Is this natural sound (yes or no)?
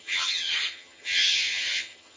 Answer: no